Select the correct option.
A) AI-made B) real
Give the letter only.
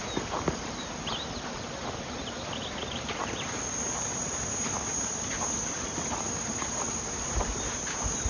B